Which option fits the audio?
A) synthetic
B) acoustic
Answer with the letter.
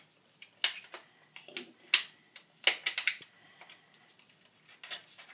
B